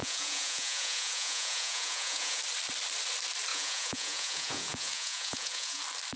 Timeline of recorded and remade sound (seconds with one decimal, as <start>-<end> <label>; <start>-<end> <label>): 0.0-2.4 remade; 2.4-3.5 recorded; 3.5-5.8 remade; 5.8-6.2 recorded